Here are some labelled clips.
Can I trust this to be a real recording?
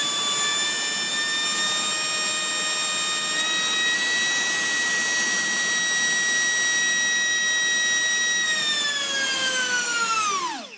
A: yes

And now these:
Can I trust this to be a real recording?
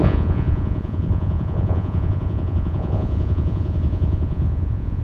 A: no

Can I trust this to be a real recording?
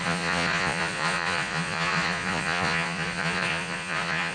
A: no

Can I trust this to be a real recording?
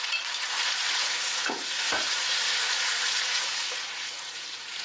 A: no